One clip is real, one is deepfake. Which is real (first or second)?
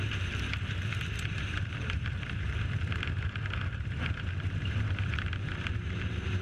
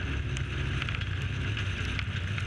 second